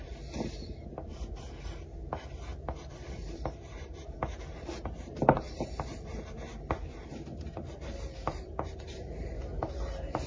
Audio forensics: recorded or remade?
remade